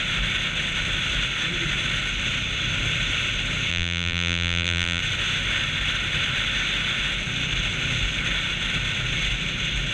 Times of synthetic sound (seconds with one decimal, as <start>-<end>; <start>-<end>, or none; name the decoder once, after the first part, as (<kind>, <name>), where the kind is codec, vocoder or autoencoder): 3.7-5.0 (vocoder, BigVGAN v2)